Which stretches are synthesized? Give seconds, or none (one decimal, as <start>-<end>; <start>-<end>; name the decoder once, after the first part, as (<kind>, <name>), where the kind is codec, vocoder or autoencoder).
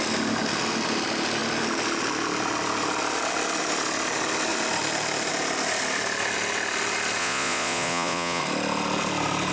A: 7.2-8.4 (vocoder, Vocos)